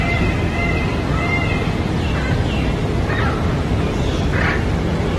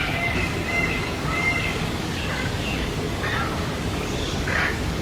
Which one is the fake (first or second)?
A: second